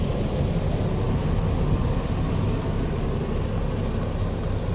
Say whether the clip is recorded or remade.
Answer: recorded